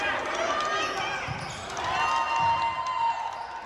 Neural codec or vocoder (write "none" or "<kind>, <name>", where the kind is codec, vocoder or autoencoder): none